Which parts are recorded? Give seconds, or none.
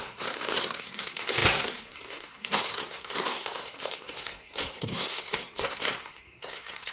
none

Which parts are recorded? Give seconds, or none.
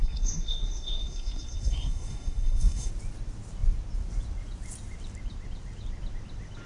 2.9-6.7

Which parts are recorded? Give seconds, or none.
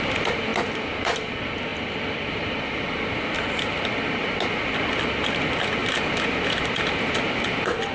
0.0-0.5; 1.2-5.8; 7.4-7.9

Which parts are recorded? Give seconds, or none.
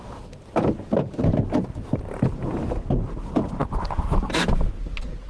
0.0-3.6; 4.5-5.3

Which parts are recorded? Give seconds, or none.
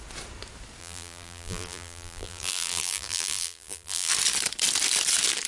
0.0-0.8; 4.1-5.5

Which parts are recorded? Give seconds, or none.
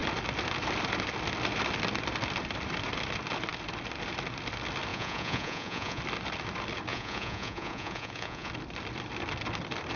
0.0-4.9; 6.0-6.9; 8.5-10.0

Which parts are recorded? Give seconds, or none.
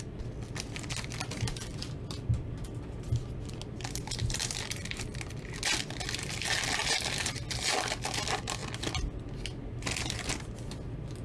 0.0-11.2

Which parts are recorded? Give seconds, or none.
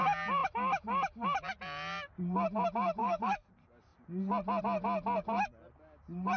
0.0-3.0; 3.5-6.4